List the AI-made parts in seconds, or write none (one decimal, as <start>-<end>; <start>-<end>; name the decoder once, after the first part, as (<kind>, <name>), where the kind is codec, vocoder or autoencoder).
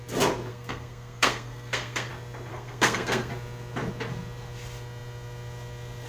0.5-2.1 (codec, SNAC); 2.5-3.3